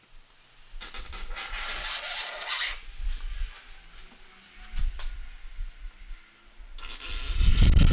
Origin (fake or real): real